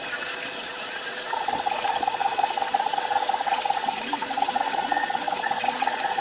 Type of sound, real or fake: fake